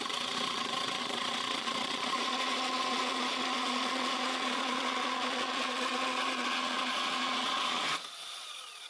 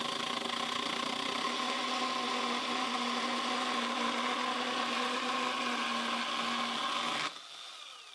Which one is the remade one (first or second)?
first